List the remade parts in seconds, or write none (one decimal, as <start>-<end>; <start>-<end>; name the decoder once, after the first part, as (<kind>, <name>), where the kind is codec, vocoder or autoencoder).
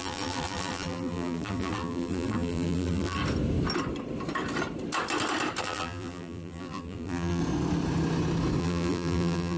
0.0-3.2 (vocoder, BigVGAN v2); 5.6-7.4; 8.6-9.6